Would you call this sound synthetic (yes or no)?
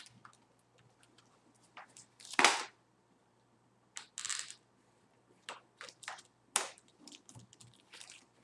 no